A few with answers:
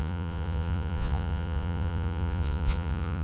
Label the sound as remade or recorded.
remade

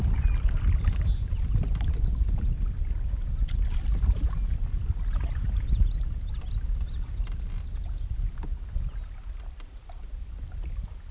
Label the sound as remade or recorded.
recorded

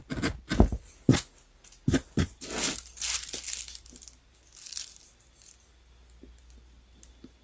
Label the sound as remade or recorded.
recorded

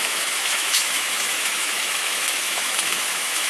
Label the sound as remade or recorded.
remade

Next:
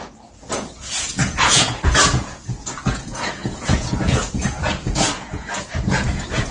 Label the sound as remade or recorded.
remade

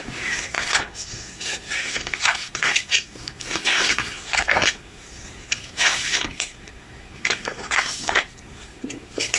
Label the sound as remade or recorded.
remade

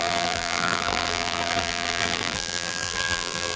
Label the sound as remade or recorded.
remade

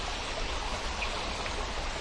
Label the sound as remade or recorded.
recorded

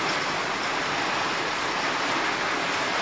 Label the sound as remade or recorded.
recorded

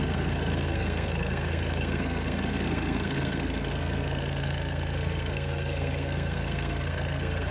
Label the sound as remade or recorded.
remade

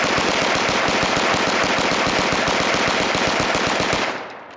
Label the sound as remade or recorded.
recorded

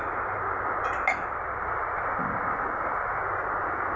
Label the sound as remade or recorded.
recorded